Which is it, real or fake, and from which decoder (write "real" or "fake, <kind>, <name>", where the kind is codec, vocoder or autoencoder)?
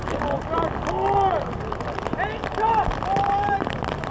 real